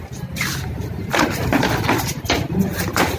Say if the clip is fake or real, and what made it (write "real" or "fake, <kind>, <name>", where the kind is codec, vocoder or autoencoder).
real